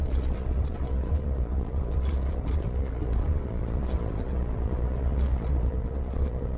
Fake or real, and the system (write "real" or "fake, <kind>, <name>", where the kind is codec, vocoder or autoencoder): fake, vocoder, Vocos